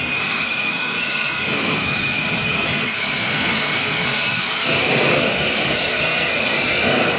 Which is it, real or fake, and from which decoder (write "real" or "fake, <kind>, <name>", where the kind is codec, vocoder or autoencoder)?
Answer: fake, codec, SNAC